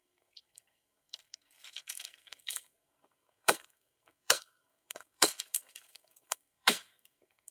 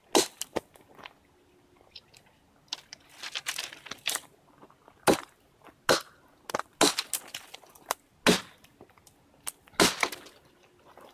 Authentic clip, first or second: second